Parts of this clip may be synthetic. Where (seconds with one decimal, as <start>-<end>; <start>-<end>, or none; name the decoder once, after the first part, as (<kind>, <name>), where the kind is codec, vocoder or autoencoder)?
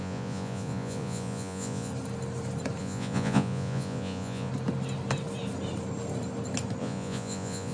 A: 0.0-1.9 (vocoder, Vocos); 2.8-4.5; 6.8-7.7